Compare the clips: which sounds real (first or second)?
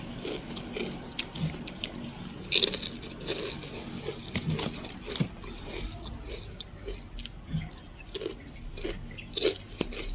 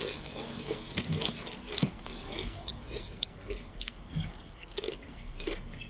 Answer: first